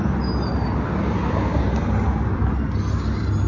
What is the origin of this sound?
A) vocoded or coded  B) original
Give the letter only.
B